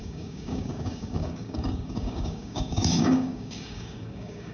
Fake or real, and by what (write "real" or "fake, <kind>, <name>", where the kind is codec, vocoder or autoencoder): fake, codec, DAC